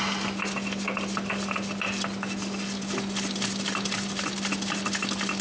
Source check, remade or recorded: recorded